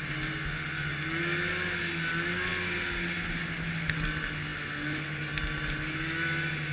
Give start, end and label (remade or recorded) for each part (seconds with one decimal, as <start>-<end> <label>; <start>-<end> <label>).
0.0-6.7 recorded